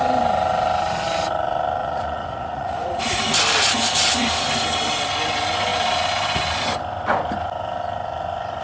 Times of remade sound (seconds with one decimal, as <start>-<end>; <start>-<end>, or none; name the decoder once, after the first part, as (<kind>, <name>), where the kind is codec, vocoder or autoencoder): 1.8-3.0 (vocoder, Vocos)